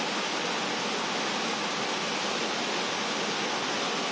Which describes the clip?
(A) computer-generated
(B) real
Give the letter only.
B